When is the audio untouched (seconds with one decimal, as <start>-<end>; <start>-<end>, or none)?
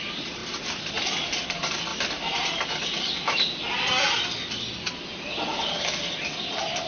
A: 0.0-1.9; 3.6-6.9